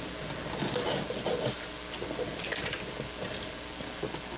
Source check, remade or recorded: recorded